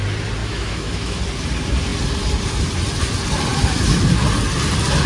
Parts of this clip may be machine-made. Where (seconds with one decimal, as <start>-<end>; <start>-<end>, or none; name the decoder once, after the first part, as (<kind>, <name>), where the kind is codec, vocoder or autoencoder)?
0.4-1.2 (autoencoder, DAC-VAE)